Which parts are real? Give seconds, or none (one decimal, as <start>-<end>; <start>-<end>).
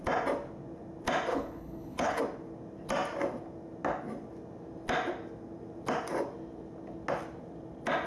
0.0-1.3; 2.2-8.1